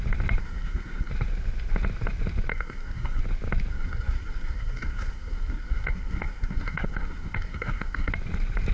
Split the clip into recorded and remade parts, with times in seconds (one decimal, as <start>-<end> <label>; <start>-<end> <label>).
0.0-0.4 recorded; 0.4-1.1 remade; 1.1-2.5 recorded; 2.5-3.2 remade; 3.2-3.7 recorded; 3.7-8.1 remade; 8.1-8.7 recorded